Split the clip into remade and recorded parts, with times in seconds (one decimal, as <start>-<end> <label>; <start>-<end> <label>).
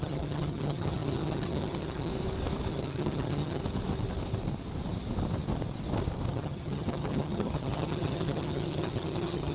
0.0-2.1 remade; 2.1-2.7 recorded; 2.7-3.6 remade; 3.6-6.3 recorded; 6.3-9.5 remade